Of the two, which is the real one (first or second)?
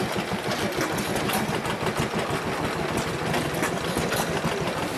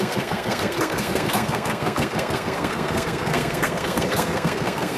first